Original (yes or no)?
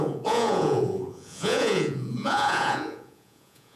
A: no